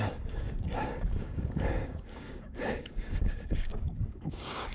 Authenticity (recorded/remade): remade